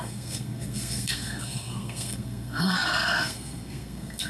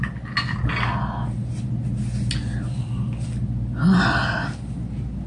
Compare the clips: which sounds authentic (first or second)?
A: second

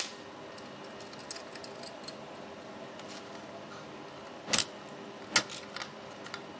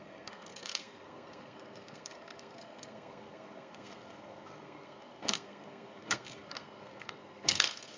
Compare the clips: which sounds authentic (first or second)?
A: first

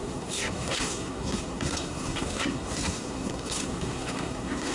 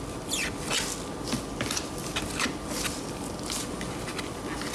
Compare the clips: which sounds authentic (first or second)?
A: second